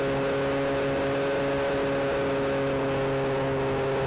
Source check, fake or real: real